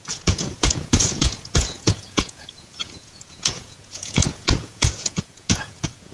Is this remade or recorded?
remade